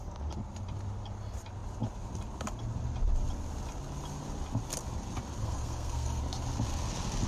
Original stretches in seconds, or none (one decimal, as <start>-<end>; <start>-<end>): 0.0-5.4; 6.2-7.3

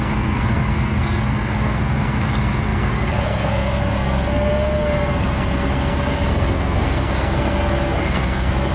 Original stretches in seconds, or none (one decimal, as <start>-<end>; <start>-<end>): none